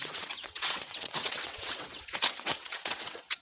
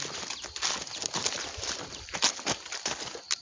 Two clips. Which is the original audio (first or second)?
second